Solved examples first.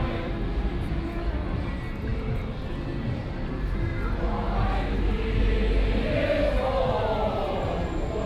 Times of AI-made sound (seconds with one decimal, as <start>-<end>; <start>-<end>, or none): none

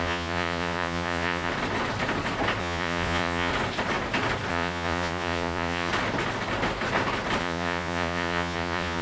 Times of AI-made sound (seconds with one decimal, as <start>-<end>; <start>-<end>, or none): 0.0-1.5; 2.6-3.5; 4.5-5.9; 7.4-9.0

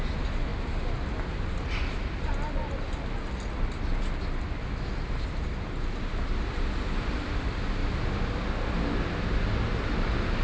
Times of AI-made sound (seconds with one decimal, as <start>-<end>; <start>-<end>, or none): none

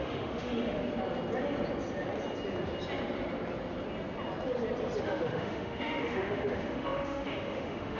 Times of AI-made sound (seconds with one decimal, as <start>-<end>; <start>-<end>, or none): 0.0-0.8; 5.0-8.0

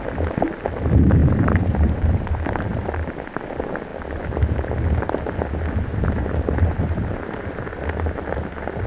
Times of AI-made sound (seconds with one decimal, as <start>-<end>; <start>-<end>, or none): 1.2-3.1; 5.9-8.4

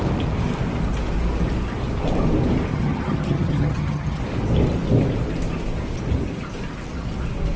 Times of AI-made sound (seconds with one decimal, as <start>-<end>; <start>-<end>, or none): 2.7-4.2

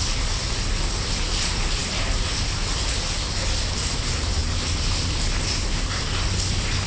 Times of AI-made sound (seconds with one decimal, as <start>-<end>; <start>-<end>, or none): none

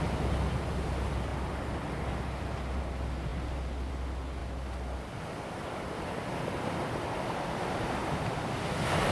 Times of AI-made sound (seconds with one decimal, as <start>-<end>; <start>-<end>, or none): none